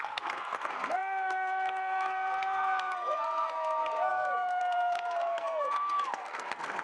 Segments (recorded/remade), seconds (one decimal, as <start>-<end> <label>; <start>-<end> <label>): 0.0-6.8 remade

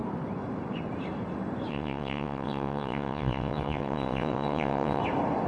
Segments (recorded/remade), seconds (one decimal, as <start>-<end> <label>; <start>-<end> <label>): 0.0-1.7 recorded; 1.7-5.0 remade; 5.0-5.5 recorded

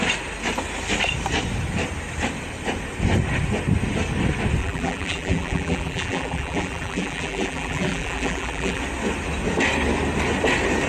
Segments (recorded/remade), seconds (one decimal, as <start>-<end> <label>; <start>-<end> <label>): 0.0-4.6 recorded; 4.6-8.8 remade; 8.8-10.9 recorded

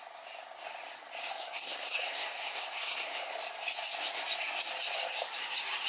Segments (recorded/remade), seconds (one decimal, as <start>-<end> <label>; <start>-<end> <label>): 0.0-1.3 recorded; 1.3-3.3 remade; 3.3-5.9 recorded

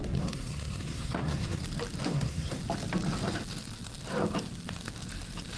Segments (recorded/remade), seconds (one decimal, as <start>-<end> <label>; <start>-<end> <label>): 0.0-1.6 remade; 1.6-2.1 recorded; 2.1-2.6 remade; 2.6-5.6 recorded